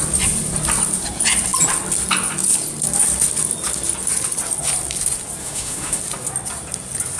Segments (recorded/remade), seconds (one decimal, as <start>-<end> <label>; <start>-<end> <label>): 0.0-5.4 recorded; 5.4-6.0 remade; 6.0-7.2 recorded